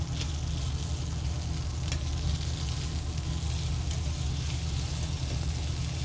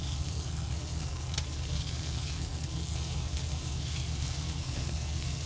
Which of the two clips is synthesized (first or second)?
second